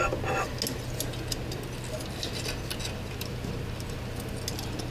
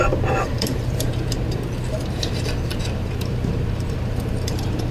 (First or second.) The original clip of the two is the first